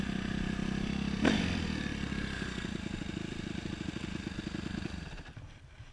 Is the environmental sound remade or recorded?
remade